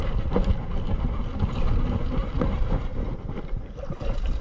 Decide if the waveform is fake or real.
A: real